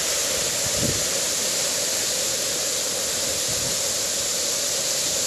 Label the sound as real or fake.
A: real